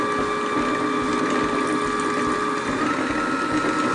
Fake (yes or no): no